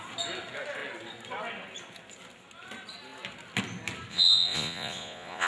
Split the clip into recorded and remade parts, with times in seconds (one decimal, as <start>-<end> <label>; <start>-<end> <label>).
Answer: 0.0-4.1 recorded; 4.1-5.5 remade

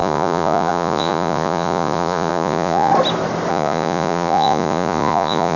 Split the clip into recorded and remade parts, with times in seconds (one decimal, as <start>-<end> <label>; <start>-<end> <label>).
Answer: 0.0-2.9 remade; 2.9-3.5 recorded; 3.5-5.6 remade